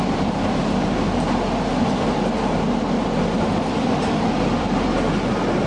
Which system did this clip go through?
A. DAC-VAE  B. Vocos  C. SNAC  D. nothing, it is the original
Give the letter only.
D